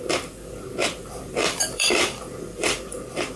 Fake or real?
fake